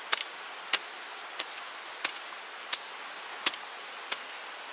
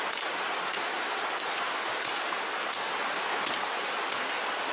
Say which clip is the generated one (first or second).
second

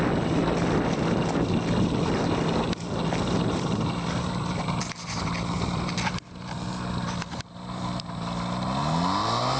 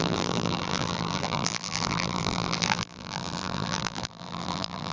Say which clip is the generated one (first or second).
second